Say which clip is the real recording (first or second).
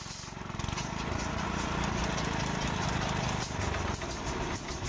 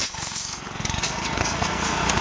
first